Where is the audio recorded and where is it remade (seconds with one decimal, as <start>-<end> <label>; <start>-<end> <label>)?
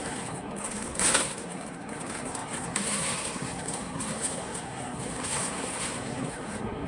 0.0-6.9 remade